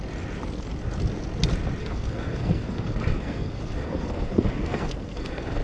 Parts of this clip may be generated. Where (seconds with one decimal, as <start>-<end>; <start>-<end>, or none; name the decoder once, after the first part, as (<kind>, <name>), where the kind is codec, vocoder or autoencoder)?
1.8-5.6 (codec, SNAC)